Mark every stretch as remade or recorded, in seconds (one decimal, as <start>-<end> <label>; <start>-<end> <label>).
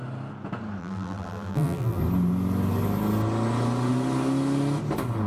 0.0-0.8 recorded; 0.8-2.0 remade; 2.0-5.3 recorded